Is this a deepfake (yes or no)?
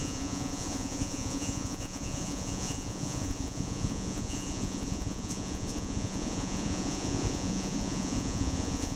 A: yes